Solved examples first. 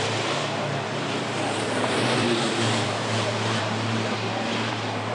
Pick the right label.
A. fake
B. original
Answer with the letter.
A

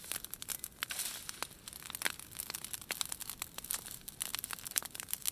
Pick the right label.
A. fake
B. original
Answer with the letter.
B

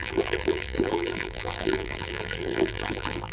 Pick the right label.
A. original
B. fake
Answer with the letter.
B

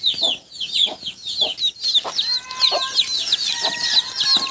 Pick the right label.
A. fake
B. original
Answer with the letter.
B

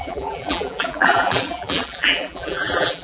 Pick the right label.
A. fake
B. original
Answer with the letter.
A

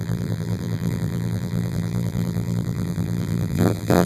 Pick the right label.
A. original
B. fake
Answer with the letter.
B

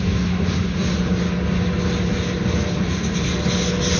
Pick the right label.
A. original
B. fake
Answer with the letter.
A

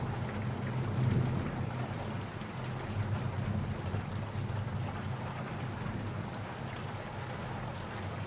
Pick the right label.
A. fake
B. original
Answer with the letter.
B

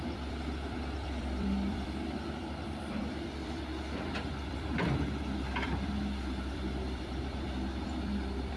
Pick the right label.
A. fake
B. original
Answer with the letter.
A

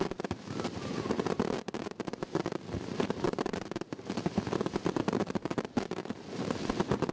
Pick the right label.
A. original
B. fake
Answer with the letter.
B